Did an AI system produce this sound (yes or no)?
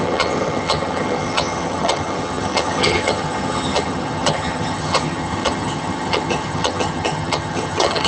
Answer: yes